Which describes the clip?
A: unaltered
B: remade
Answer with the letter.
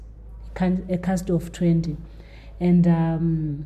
A